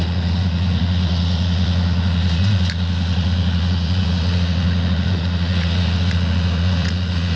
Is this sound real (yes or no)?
no